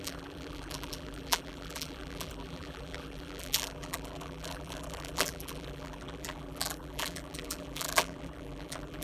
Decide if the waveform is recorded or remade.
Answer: remade